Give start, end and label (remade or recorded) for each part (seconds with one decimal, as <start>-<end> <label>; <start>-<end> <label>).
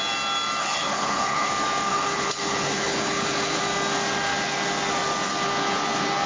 0.0-0.6 recorded; 0.6-1.5 remade; 1.5-1.9 recorded; 1.9-3.6 remade; 3.6-6.3 recorded